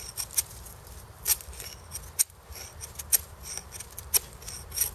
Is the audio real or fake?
real